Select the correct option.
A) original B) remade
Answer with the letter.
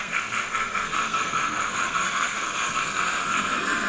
B